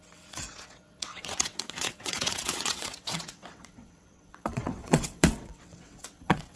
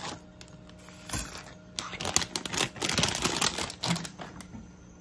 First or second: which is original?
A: second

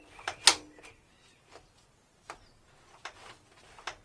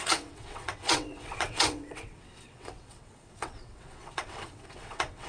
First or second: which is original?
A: first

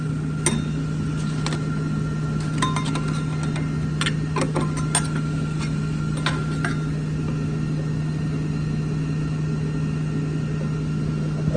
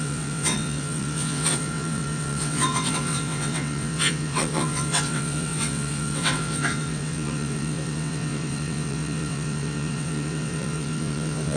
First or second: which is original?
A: first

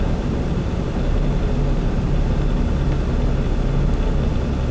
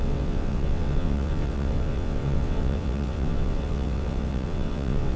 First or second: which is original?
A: first